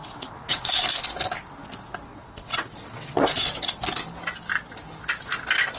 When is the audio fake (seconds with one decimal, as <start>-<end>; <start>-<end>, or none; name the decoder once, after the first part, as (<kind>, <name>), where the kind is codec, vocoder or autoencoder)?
0.0-0.7 (vocoder, WaveNeXt); 2.1-3.8